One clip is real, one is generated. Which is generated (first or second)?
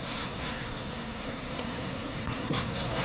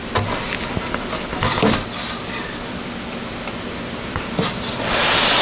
first